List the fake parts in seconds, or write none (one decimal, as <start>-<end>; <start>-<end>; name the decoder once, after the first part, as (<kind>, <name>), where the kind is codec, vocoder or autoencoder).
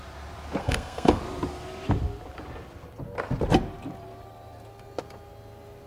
0.6-1.2 (codec, SNAC)